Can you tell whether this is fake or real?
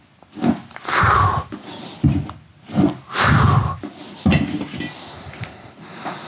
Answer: real